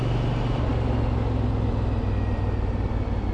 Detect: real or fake real